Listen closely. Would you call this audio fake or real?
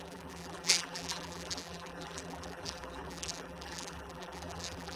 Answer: fake